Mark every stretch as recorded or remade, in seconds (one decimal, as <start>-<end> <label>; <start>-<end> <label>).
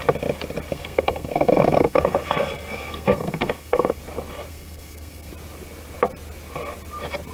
0.0-0.7 recorded; 0.7-4.0 remade; 4.0-4.5 recorded; 4.5-5.3 remade; 5.3-7.3 recorded